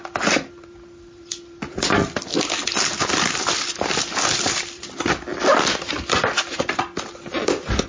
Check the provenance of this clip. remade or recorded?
remade